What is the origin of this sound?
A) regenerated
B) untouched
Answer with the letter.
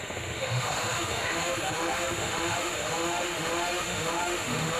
A